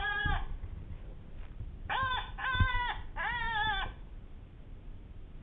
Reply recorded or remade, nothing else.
remade